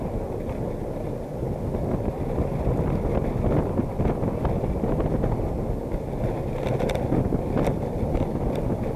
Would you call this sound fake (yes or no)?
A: no